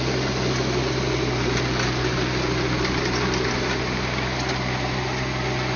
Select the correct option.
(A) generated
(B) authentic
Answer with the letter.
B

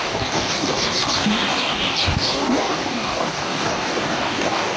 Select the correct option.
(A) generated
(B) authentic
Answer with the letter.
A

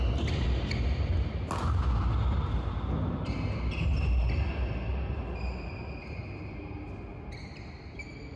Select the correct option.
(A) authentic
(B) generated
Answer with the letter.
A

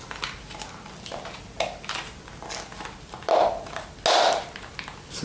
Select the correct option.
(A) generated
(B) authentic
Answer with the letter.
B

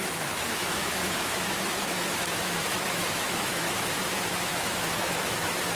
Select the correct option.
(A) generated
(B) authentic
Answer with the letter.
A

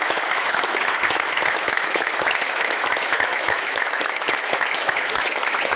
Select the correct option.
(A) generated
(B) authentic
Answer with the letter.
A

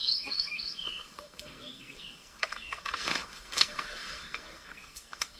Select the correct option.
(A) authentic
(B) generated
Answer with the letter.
B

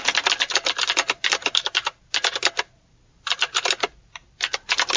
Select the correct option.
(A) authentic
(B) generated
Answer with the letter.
B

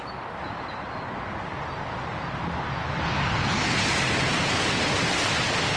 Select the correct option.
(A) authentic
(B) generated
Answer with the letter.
A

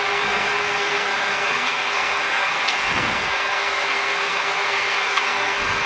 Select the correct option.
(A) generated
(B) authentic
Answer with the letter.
A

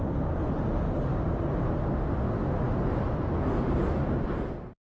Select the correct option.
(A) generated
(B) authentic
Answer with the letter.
B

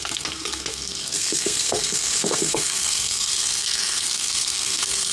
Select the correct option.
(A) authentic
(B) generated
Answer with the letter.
B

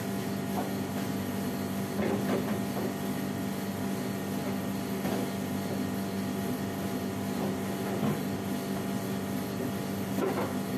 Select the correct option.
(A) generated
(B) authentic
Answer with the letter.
B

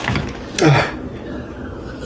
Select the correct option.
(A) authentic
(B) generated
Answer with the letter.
A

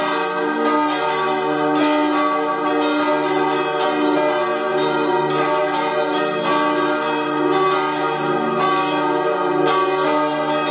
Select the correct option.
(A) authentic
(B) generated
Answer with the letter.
A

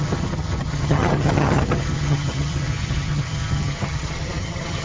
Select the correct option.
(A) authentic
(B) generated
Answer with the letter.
B